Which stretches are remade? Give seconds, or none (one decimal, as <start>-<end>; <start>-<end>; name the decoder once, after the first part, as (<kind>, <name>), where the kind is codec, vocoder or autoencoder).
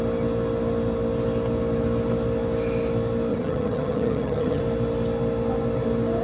3.3-4.6 (vocoder, HiFi-GAN)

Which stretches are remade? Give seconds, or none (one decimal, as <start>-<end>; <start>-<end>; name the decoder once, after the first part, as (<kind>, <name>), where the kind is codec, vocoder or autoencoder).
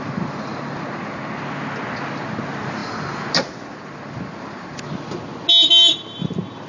none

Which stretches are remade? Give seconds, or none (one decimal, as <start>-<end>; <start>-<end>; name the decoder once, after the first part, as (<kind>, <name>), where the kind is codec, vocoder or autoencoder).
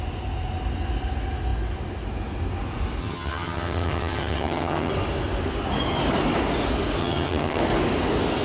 3.0-4.9 (vocoder, HiFi-GAN); 7.0-7.6